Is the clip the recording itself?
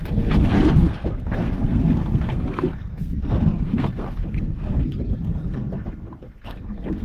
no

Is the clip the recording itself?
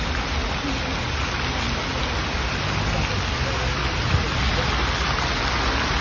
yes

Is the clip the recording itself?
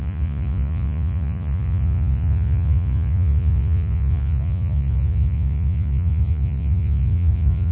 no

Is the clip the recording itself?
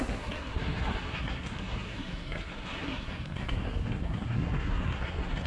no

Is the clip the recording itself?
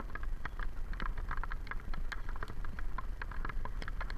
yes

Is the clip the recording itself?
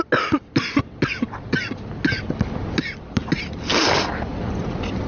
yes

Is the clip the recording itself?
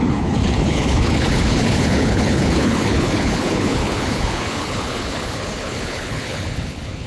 no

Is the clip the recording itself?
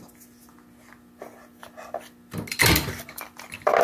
yes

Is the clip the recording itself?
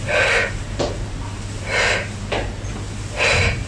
yes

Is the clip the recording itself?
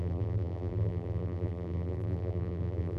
no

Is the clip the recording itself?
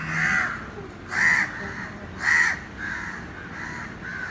yes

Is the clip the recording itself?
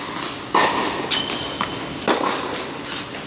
yes